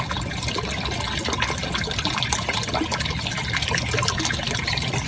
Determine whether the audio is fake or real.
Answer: real